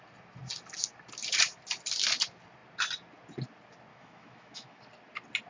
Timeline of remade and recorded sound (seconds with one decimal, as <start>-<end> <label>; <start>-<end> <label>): 0.0-3.9 recorded; 3.9-4.8 remade; 4.8-5.5 recorded